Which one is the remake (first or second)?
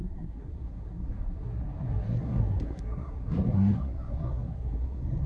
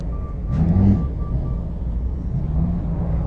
first